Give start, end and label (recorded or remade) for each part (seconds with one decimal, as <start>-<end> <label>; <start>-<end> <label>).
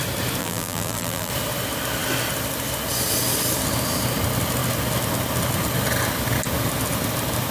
0.0-0.4 recorded; 0.4-1.3 remade; 1.3-7.5 recorded